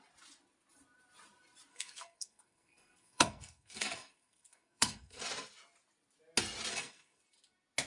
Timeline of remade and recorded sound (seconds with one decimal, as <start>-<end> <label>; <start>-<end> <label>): 0.0-1.7 recorded; 1.7-5.2 remade; 5.2-6.7 recorded; 6.7-7.2 remade; 7.2-7.9 recorded